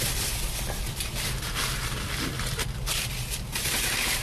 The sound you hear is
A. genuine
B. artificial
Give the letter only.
B